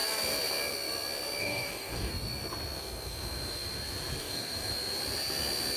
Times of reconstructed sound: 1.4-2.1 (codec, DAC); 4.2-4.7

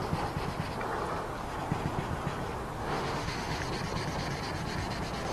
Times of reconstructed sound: 2.8-3.6 (autoencoder, DAC-VAE)

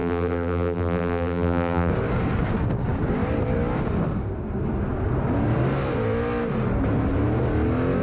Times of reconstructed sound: 0.0-1.9 (vocoder, BigVGAN v2)

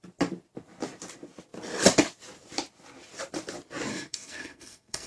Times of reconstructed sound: 3.9-5.1 (codec, SNAC)

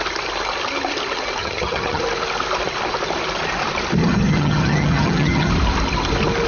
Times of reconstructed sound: 1.4-2.0 (vocoder, HiFi-GAN); 4.0-5.5

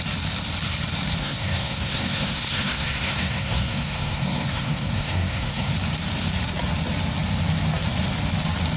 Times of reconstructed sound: 1.2-5.7 (codec, SNAC)